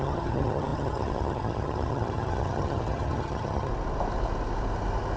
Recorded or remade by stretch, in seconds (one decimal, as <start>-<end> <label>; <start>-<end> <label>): 0.0-3.7 remade; 3.7-5.2 recorded